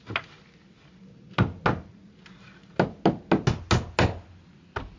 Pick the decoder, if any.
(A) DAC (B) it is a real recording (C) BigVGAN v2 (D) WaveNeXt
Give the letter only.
B